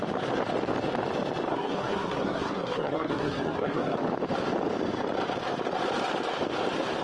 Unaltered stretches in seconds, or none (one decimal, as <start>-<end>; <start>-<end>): 0.0-1.5; 4.0-7.0